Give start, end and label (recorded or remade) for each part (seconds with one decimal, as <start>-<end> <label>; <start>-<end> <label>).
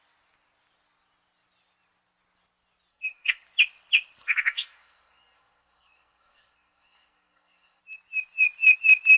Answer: 0.0-2.9 recorded; 2.9-3.4 remade; 3.4-4.2 recorded; 4.2-7.8 remade; 7.8-9.2 recorded